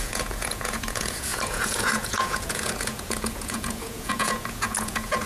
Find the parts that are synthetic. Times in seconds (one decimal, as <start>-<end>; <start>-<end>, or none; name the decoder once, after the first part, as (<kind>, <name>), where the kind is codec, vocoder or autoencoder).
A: 0.0-5.3 (vocoder, Vocos)